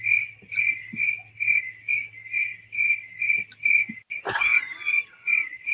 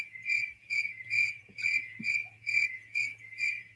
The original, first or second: first